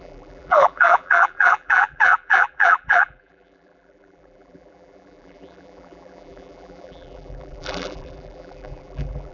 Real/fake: fake